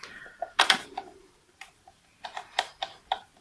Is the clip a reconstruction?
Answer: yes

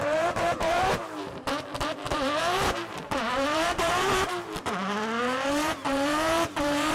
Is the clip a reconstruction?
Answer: yes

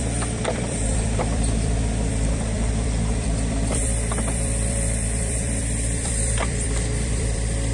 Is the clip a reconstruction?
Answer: yes